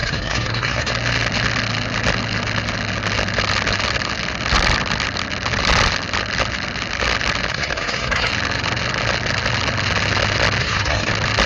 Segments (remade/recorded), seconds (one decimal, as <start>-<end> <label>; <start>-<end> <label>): 0.0-0.9 remade; 0.9-7.5 recorded; 7.5-8.3 remade; 8.3-10.6 recorded; 10.6-11.1 remade; 11.1-11.5 recorded

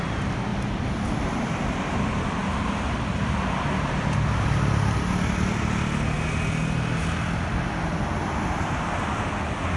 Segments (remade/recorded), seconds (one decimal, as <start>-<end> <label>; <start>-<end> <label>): 0.0-9.8 recorded